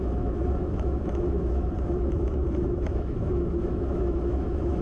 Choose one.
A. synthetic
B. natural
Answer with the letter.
A